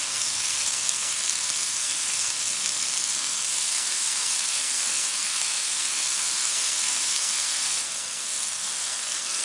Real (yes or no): no